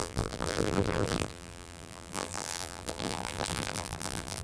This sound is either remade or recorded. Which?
remade